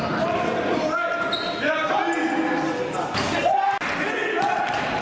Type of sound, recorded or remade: recorded